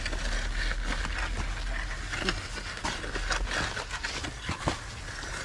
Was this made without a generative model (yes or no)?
yes